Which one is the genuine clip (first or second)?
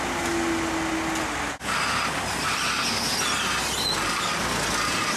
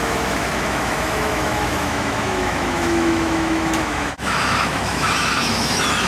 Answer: first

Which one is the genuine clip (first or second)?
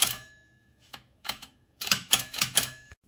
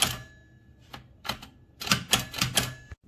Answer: second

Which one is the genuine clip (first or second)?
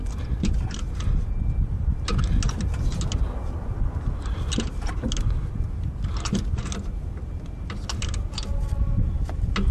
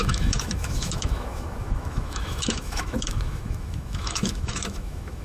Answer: first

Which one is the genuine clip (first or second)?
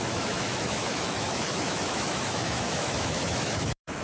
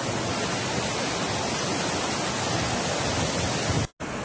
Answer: second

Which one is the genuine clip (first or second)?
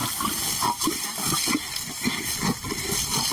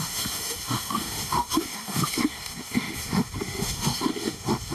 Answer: first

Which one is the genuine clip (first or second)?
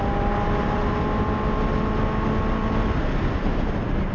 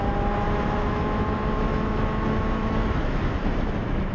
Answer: first